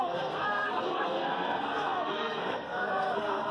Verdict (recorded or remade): remade